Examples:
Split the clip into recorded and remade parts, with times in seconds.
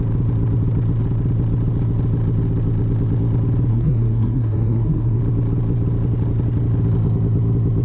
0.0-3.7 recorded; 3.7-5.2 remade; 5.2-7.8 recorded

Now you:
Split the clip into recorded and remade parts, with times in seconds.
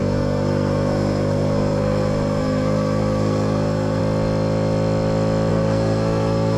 0.0-4.0 remade; 4.0-5.5 recorded; 5.5-6.6 remade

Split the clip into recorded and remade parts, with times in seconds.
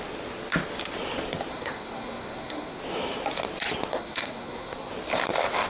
0.0-1.5 recorded; 1.5-2.8 remade; 2.8-3.9 recorded; 3.9-4.9 remade; 4.9-5.7 recorded